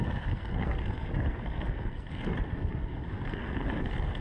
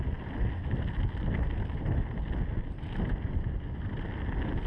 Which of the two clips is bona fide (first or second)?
second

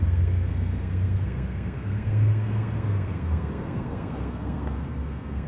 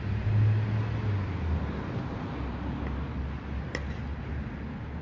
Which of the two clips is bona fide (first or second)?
second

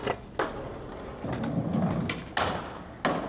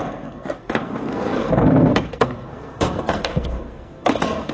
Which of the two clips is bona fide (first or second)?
first